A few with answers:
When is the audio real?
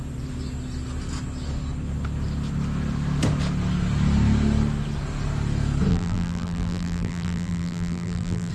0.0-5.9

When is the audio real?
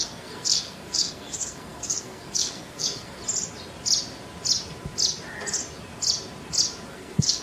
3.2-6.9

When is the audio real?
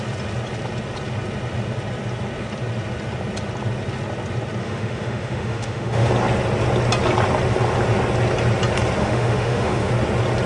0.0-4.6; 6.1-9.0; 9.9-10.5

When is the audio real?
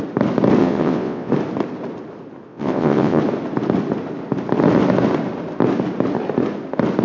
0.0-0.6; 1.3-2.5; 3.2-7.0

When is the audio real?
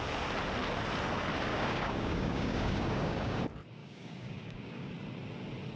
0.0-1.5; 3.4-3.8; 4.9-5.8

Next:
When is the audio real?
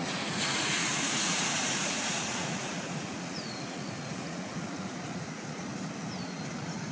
5.7-6.5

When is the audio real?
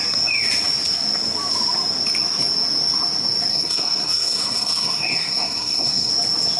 0.0-3.5; 6.1-6.6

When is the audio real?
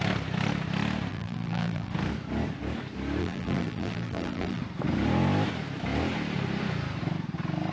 0.0-1.1; 1.9-3.2; 4.6-7.7